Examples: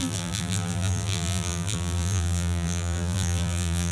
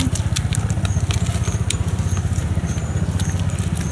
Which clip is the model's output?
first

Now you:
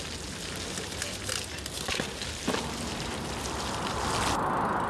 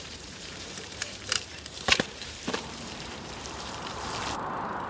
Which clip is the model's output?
second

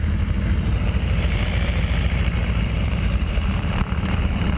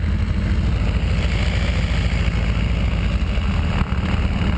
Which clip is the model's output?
first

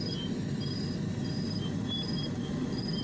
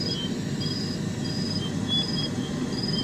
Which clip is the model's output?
first